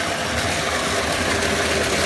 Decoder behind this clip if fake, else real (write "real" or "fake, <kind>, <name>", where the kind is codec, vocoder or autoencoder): real